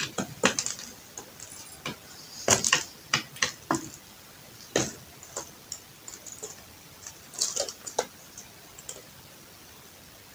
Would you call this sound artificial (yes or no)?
no